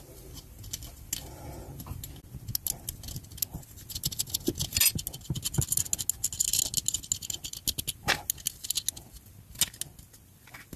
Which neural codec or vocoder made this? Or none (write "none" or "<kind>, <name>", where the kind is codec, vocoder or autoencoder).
none